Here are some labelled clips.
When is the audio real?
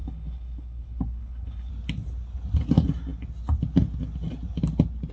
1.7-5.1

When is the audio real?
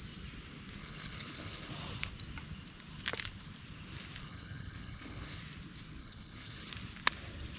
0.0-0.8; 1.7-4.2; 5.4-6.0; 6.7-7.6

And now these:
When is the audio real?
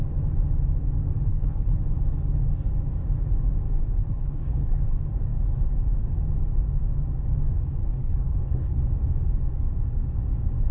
0.0-1.3; 1.8-4.0; 4.8-7.8; 8.8-10.7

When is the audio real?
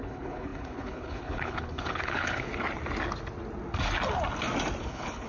2.5-4.8